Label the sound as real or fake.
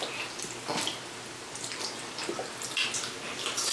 real